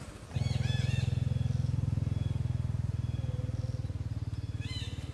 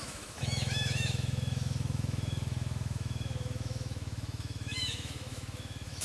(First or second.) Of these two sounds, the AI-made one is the second